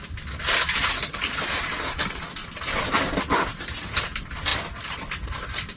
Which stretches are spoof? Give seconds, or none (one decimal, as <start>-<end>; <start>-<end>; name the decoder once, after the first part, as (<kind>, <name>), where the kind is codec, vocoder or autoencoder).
none